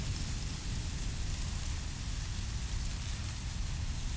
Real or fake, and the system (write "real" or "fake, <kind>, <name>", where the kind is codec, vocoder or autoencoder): real